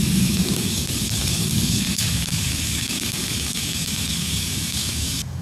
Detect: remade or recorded remade